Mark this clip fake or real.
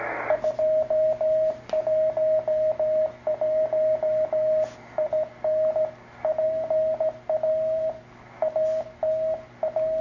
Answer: real